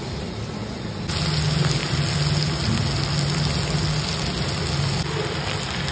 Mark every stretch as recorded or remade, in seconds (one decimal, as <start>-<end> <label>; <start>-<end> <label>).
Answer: 0.0-5.9 recorded